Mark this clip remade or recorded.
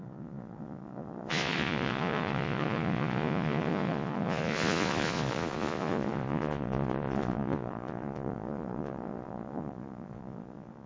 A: remade